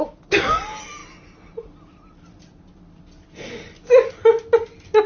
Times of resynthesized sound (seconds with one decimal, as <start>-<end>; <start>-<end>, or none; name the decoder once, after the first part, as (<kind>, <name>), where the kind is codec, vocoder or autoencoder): none